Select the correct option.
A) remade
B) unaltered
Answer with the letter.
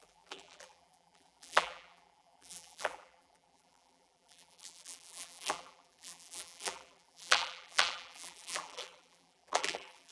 A